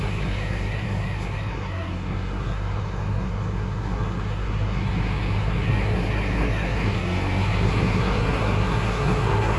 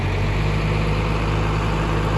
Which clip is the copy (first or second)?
first